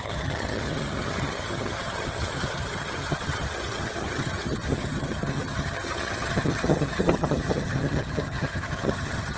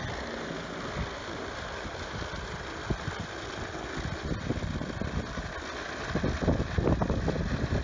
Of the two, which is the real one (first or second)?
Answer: second